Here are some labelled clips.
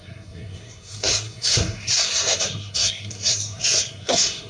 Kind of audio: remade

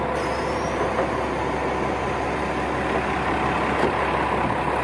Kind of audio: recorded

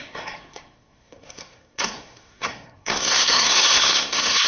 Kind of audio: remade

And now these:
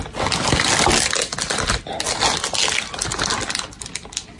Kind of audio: recorded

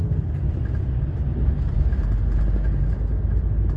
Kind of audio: recorded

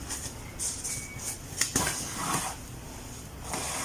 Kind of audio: recorded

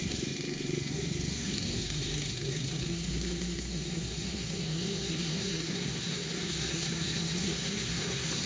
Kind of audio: remade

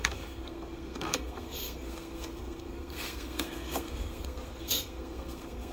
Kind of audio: remade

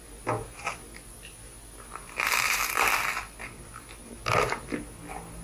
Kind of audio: recorded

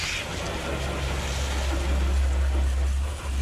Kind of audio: recorded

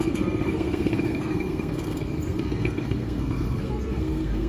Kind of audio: remade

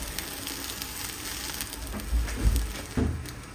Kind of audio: recorded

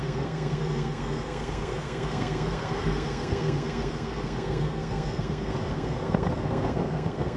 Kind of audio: remade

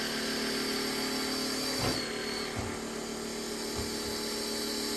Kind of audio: recorded